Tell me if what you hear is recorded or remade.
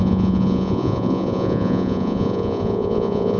remade